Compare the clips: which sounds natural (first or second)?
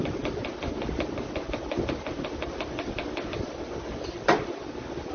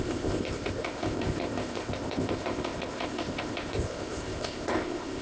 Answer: first